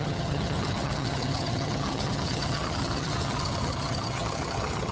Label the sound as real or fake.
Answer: fake